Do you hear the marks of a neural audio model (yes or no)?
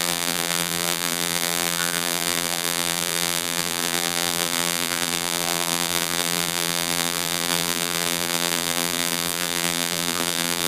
yes